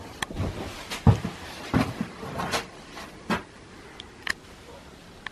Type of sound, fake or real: real